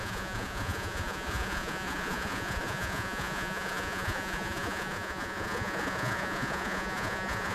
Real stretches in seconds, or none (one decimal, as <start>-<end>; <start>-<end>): none